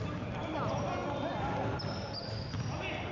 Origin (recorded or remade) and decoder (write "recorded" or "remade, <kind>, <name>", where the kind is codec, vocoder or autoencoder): recorded